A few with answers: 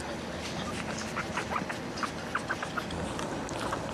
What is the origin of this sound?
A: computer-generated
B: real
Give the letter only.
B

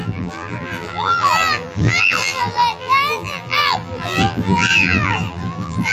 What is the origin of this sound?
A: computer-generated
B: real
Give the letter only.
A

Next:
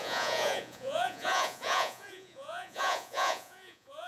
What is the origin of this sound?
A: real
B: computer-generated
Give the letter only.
B